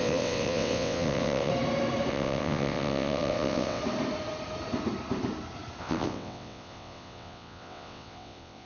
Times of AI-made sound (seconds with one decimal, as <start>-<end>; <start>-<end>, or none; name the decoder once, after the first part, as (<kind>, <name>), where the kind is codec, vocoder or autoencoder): 0.0-1.5 (vocoder, WaveNeXt); 2.1-3.8; 5.8-8.7